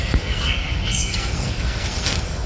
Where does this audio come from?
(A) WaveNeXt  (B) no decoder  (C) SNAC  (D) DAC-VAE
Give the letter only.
C